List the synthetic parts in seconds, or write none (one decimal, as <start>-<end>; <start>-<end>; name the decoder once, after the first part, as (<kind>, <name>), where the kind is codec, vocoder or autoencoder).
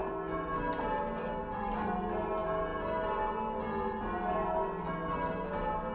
none